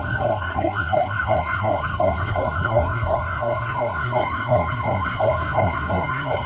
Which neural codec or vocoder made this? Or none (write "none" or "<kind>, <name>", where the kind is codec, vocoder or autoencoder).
codec, SNAC